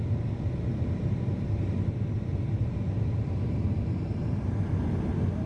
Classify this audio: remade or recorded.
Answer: recorded